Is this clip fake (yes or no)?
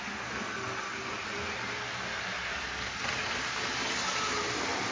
no